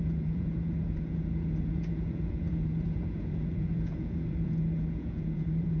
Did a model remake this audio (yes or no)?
yes